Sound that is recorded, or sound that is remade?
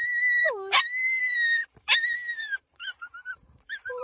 remade